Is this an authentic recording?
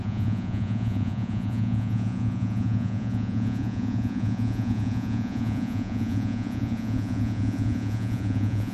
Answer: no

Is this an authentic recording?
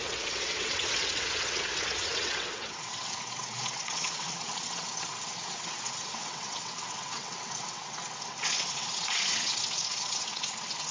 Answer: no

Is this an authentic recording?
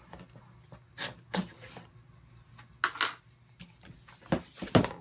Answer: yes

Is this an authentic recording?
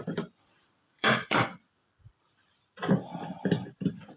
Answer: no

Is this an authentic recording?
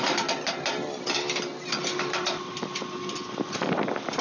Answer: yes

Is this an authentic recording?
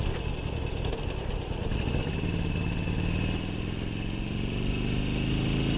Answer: yes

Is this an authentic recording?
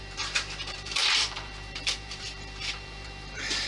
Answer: no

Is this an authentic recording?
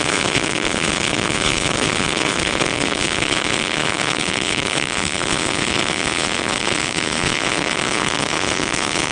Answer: no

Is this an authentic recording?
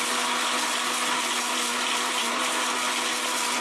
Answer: yes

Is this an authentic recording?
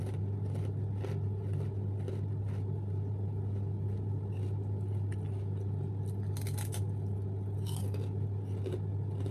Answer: yes